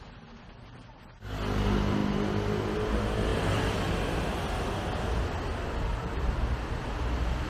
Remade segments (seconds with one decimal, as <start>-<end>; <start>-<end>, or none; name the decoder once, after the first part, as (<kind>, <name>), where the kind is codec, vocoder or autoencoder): 3.3-4.4 (vocoder, BigVGAN v2); 5.9-6.9